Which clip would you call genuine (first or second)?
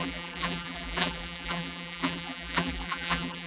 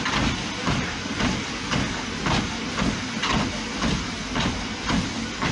second